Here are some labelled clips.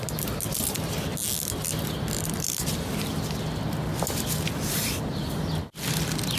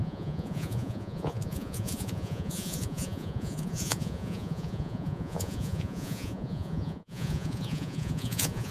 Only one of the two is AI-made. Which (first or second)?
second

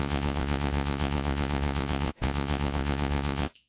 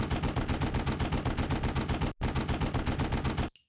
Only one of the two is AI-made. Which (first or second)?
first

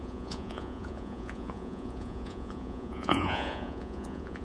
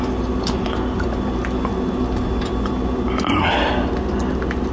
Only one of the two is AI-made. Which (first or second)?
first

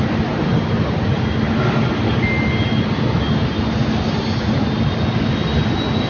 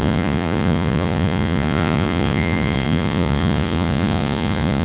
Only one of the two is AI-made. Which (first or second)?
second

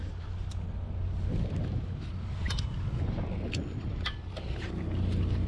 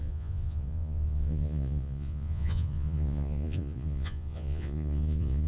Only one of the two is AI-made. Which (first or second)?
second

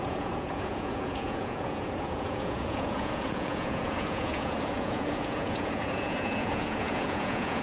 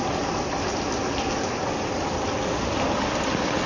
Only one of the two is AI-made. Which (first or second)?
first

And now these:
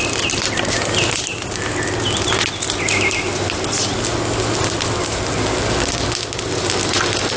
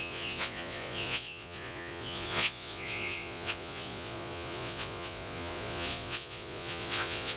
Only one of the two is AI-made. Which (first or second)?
second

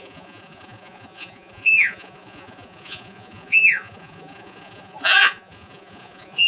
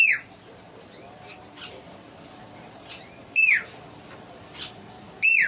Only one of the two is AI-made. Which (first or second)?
first